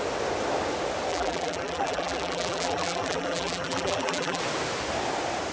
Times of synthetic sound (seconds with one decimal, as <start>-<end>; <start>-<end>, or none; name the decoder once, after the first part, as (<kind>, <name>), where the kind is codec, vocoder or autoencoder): 1.1-4.4 (vocoder, BigVGAN v2)